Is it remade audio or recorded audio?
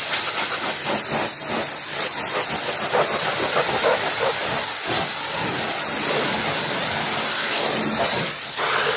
recorded